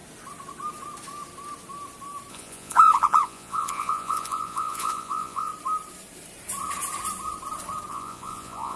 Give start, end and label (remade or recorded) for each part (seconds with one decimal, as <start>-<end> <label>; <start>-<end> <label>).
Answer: 0.0-2.3 recorded; 2.3-5.5 remade; 5.5-7.9 recorded; 7.9-8.8 remade